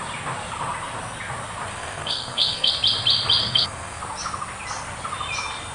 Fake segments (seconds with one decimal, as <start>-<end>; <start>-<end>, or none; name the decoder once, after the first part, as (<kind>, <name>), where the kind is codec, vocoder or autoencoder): 1.7-2.7 (codec, SNAC); 3.4-4.0